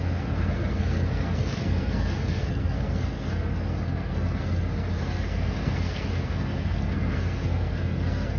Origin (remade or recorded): remade